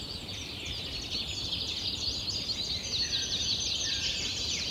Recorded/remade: recorded